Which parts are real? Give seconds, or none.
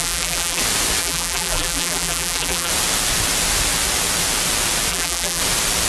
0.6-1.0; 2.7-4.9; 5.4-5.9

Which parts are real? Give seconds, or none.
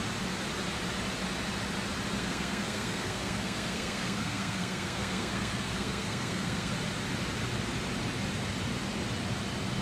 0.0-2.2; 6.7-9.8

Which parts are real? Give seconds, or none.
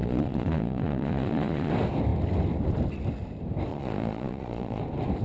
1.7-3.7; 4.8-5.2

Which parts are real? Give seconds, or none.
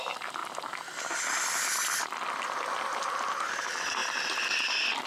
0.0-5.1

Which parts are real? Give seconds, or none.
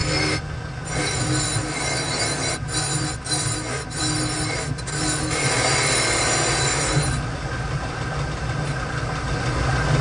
0.0-10.0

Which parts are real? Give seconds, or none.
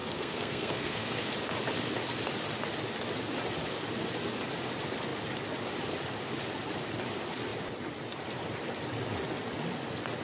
1.3-10.2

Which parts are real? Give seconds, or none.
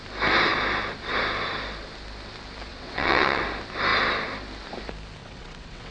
0.0-2.7; 3.4-5.2